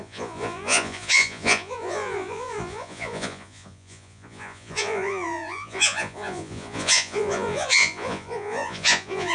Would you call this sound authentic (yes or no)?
no